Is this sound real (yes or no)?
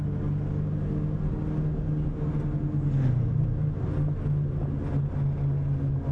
yes